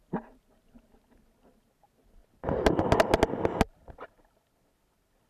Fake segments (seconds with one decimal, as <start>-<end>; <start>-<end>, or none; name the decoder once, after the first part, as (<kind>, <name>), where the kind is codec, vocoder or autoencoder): none

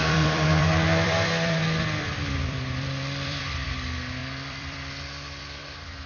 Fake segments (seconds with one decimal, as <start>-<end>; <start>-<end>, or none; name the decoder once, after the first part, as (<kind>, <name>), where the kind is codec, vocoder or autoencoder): 0.0-3.7 (vocoder, BigVGAN v2); 4.2-5.6